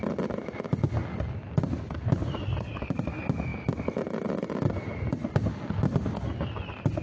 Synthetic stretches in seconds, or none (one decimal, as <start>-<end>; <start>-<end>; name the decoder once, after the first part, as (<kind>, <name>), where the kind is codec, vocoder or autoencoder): none